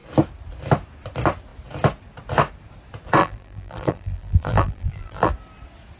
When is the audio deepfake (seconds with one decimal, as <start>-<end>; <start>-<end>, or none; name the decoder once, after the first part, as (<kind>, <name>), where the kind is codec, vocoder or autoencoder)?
3.2-5.3 (vocoder, BigVGAN v2)